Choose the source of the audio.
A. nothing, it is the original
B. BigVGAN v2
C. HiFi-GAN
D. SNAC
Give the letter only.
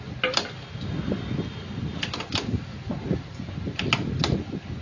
A